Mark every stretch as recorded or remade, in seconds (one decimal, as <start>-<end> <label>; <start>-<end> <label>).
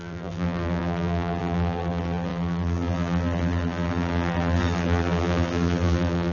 0.0-6.3 remade